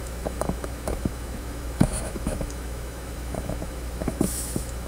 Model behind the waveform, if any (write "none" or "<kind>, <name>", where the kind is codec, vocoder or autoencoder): autoencoder, DAC-VAE